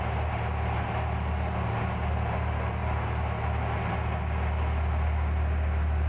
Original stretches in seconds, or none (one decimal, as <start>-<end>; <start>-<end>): 0.0-6.1